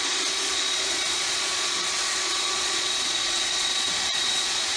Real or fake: fake